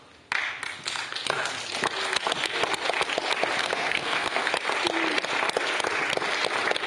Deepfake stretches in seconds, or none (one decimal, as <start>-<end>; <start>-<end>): 3.6-4.5